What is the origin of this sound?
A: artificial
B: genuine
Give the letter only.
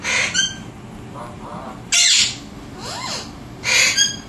B